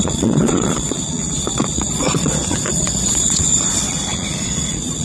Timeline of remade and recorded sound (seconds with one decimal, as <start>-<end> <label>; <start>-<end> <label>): 0.0-5.0 remade